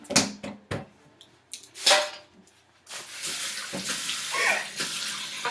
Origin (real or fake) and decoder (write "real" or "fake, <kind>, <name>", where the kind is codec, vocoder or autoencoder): real